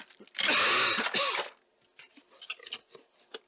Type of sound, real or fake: real